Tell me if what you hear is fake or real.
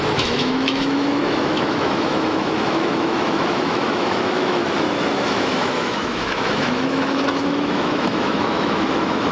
fake